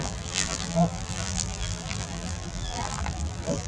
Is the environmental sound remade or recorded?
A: remade